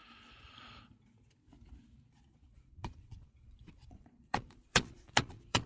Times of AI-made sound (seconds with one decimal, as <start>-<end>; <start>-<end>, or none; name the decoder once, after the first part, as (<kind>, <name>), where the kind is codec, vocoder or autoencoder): 2.1-5.7 (vocoder, Vocos)